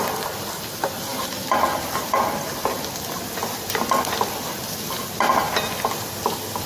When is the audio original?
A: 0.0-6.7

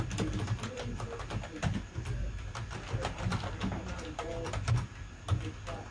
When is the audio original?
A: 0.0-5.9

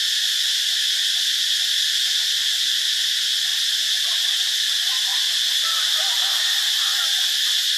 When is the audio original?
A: 0.0-7.8

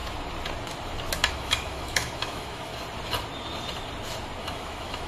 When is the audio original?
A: 0.0-1.3; 2.7-4.4

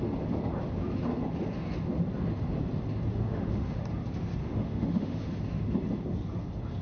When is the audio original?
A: 0.0-3.1; 3.8-4.4; 5.3-6.8

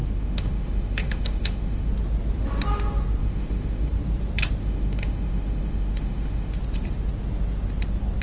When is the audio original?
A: 1.9-3.2; 3.9-4.6; 6.6-8.2